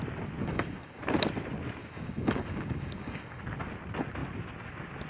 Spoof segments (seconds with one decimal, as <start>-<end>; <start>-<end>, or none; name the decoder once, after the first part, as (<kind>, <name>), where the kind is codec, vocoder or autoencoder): 0.4-1.0 (codec, DAC); 1.8-3.4